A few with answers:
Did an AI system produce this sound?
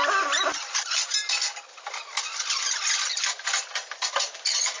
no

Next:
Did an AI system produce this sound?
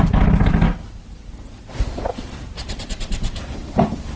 yes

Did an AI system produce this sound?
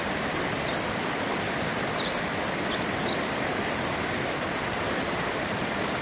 no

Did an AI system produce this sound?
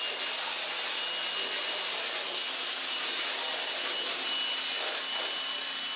no